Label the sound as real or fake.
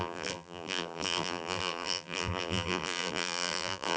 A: fake